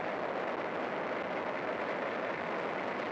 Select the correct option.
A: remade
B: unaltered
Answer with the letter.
B